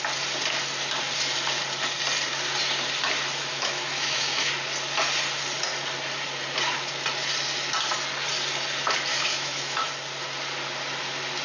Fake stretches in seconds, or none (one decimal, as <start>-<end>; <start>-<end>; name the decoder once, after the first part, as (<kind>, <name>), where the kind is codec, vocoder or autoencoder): 3.4-4.5 (autoencoder, DAC-VAE); 9.1-9.9

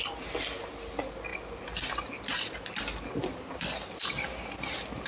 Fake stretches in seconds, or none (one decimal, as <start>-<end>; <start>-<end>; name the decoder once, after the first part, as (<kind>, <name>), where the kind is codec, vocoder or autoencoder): none

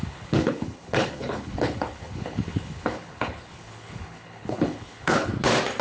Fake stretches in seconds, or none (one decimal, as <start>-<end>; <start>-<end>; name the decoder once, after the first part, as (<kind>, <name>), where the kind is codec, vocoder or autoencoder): 0.0-5.3 (codec, HILCodec)

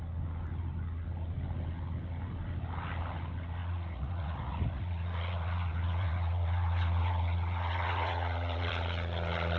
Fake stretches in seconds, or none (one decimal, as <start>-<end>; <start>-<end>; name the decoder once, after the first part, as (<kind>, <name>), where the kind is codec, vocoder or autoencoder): 3.6-8.7 (vocoder, Vocos)

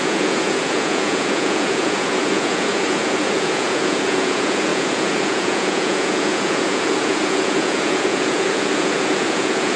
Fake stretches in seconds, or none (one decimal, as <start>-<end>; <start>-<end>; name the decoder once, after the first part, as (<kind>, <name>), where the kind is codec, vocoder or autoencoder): 0.0-9.8 (vocoder, Vocos)

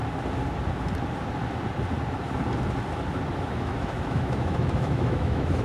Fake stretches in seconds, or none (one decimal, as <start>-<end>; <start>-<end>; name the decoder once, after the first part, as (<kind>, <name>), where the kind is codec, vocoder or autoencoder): 3.4-5.6 (autoencoder, DAC-VAE)

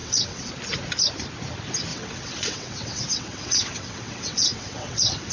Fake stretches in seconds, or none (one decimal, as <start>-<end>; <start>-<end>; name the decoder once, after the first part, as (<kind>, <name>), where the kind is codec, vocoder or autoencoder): 0.0-0.5 (vocoder, WaveNeXt); 1.9-5.3